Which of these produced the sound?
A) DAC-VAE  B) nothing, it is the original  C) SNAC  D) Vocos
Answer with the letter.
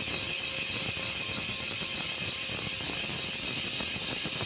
B